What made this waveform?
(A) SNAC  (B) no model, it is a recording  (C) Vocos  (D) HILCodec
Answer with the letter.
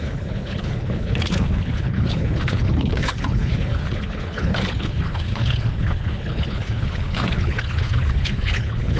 D